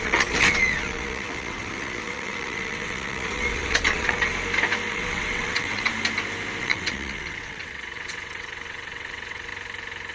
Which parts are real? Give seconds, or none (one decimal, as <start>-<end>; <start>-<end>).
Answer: 4.3-4.9; 5.9-6.6; 9.5-10.1